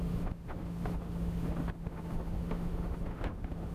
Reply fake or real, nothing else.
fake